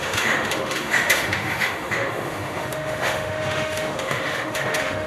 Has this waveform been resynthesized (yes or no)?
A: yes